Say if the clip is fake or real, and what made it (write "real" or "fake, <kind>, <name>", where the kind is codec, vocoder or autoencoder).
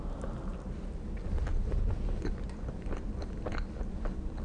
real